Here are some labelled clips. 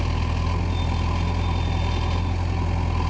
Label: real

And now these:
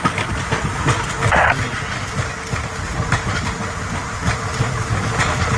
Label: real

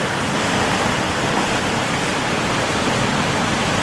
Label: fake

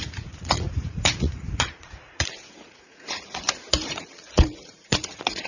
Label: fake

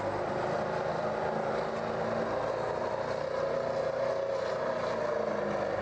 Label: real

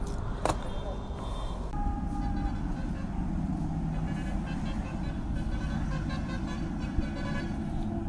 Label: real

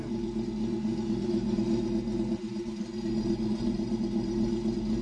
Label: real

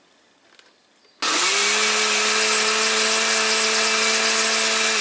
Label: real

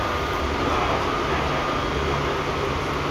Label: real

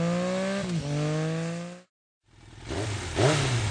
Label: real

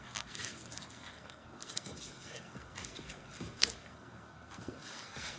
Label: fake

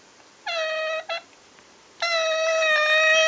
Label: real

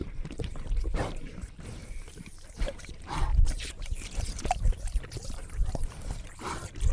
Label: real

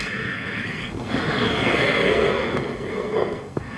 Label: fake